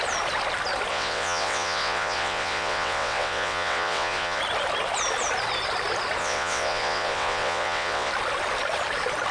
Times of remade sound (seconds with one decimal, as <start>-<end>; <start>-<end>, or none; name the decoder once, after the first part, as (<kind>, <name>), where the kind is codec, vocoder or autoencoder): 0.9-4.4 (vocoder, WaveNeXt); 6.2-8.1

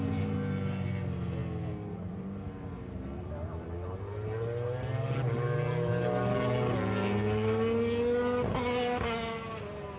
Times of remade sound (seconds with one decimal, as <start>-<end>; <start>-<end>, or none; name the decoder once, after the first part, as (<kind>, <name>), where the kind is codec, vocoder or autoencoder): none

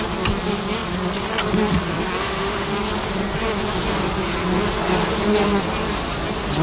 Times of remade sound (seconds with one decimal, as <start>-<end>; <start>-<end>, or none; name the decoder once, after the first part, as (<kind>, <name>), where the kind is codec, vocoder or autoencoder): 2.2-2.7 (autoencoder, DAC-VAE)

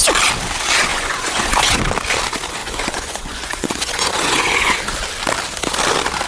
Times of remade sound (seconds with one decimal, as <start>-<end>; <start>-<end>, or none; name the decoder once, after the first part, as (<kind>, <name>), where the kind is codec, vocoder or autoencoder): 0.9-1.8 (vocoder, Vocos); 2.6-4.8